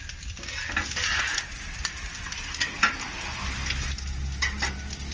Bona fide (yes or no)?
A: yes